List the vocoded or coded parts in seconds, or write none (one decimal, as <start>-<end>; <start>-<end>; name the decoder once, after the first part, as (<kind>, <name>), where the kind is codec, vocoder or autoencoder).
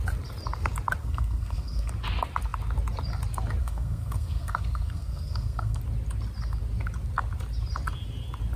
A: 1.0-1.9 (codec, SNAC); 3.6-5.8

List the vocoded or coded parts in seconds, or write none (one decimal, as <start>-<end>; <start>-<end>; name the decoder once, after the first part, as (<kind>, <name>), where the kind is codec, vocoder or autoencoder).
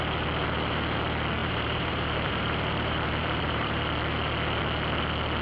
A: 1.4-3.8 (vocoder, BigVGAN v2)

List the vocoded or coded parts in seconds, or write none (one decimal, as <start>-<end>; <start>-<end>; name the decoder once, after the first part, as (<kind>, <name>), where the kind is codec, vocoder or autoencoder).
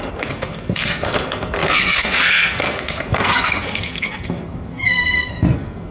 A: 0.0-5.9 (codec, SNAC)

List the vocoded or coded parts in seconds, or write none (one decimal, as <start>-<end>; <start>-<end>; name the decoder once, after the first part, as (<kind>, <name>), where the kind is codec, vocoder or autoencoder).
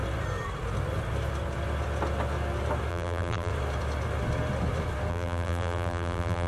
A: 2.9-3.5 (vocoder, BigVGAN v2); 5.1-6.5